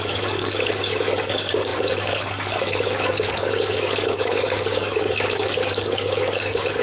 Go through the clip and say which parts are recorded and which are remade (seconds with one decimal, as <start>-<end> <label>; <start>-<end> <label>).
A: 0.0-6.8 remade